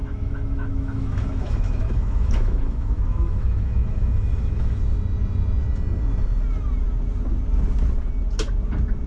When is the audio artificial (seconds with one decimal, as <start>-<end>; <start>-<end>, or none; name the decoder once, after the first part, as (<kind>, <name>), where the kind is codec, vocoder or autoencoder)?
0.0-4.8 (autoencoder, DAC-VAE)